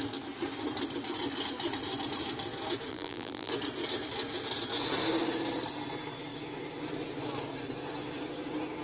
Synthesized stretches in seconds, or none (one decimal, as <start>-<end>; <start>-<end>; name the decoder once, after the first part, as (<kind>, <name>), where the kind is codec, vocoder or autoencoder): 2.9-3.5 (vocoder, BigVGAN v2)